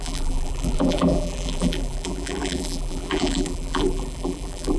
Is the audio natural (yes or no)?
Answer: no